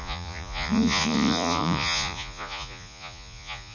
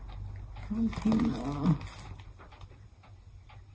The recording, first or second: second